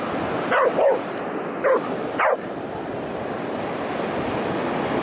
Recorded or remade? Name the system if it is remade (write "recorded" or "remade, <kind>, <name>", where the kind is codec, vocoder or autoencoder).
recorded